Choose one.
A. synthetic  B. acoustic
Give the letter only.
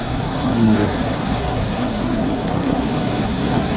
A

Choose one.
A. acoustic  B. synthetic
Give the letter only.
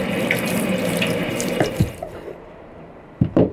B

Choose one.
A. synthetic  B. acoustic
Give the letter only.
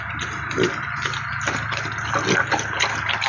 B